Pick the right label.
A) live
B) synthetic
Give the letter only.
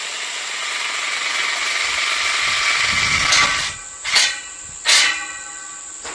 A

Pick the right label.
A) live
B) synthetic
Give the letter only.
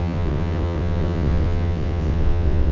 B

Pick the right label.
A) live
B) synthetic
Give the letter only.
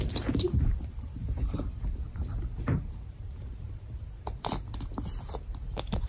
B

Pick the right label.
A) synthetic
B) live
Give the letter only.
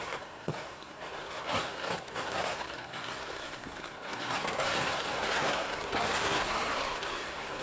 A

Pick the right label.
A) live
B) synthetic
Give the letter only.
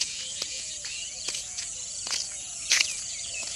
B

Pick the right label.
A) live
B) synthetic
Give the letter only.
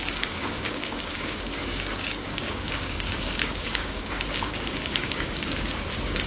B